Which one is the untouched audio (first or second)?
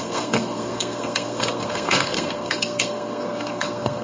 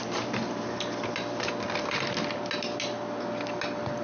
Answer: second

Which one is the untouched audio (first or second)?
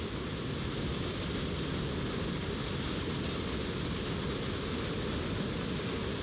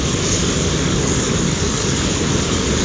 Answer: first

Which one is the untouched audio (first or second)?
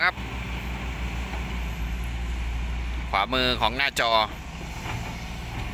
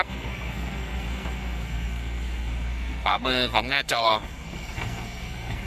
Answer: first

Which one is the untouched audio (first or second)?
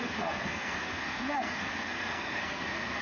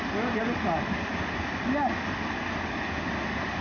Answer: second